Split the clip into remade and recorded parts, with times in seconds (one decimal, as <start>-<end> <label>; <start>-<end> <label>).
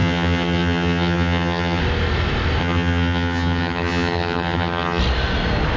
0.0-1.8 remade; 1.8-2.6 recorded; 2.6-5.0 remade; 5.0-5.8 recorded